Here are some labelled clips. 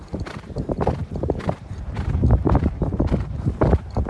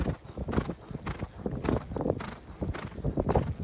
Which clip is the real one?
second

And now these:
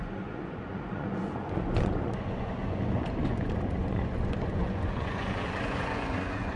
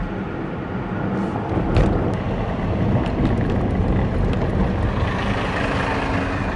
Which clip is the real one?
second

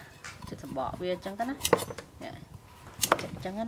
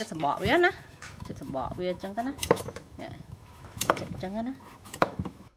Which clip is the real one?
first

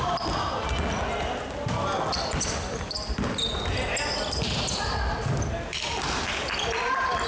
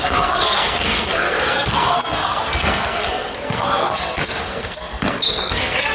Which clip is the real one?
first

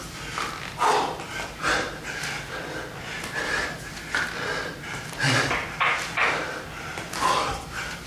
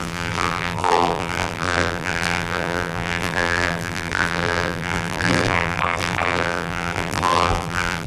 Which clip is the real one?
first